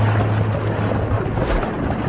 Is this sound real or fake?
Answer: real